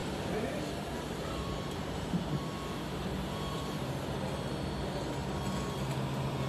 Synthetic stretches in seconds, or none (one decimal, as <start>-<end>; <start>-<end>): 0.0-3.9

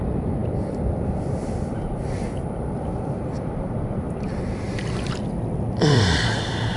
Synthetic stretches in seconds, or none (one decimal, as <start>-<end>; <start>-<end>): 0.0-6.8

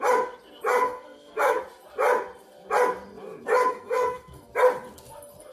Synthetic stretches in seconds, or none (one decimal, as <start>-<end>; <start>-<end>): 0.8-1.6; 3.7-4.5

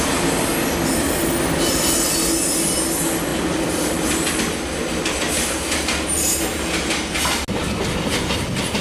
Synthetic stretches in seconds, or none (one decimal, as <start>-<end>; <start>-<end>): 3.3-4.3

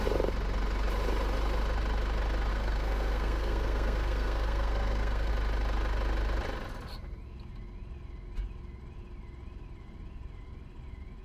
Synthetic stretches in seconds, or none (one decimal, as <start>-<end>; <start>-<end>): 2.5-5.3

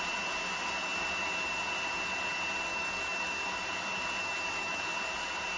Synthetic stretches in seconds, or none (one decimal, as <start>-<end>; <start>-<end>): 2.7-3.6; 4.2-4.9

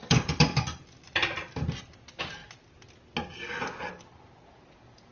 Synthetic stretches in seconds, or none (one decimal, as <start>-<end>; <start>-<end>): none

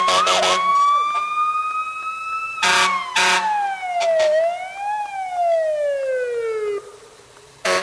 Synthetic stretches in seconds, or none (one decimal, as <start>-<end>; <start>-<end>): none